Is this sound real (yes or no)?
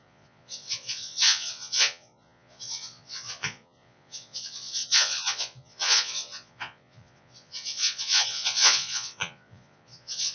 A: no